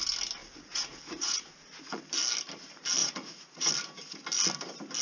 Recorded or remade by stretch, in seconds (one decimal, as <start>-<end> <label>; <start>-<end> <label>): 0.0-0.4 recorded; 0.4-2.0 remade; 2.0-3.0 recorded; 3.0-3.7 remade; 3.7-5.0 recorded